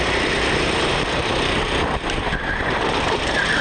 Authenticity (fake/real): fake